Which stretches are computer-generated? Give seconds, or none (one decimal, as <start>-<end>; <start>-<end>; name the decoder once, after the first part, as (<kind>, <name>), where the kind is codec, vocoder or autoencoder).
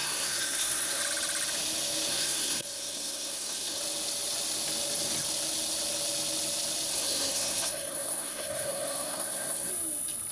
0.0-1.0 (codec, SNAC); 2.1-3.8; 6.9-9.7